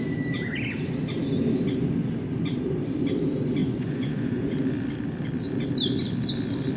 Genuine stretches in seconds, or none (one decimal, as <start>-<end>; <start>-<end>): 0.0-3.6; 4.5-6.8

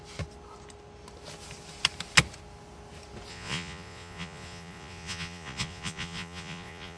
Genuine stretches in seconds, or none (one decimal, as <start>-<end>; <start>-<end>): 0.0-3.3